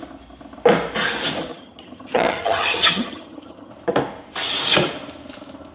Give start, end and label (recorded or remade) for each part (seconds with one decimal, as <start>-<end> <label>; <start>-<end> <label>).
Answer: 0.0-1.5 recorded; 1.5-3.7 remade; 3.7-5.7 recorded